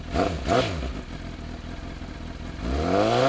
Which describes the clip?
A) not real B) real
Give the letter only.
B